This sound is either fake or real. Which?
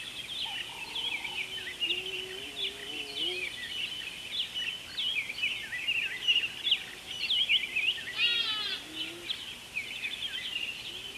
real